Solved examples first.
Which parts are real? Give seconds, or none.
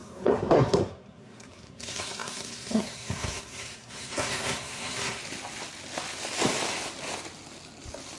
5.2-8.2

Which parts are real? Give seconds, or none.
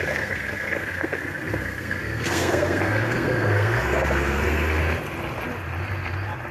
4.8-6.5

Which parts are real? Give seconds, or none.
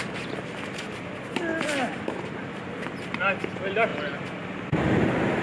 0.0-5.4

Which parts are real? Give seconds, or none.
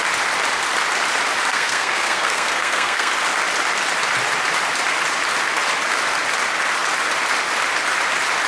0.0-1.5; 3.1-8.5